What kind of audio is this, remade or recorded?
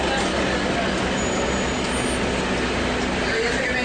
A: recorded